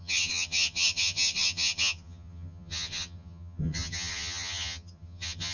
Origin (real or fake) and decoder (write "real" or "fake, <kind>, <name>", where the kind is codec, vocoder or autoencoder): fake, vocoder, HiFi-GAN